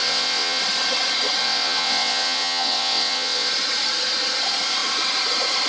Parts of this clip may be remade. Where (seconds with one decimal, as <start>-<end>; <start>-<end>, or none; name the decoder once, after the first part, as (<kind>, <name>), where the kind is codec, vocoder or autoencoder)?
0.0-0.6 (vocoder, WaveNeXt); 1.4-3.5